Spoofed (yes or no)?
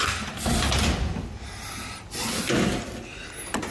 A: no